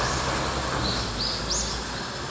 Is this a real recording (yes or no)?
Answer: yes